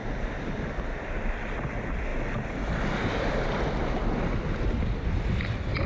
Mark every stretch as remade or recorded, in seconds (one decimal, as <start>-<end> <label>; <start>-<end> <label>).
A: 0.0-5.9 recorded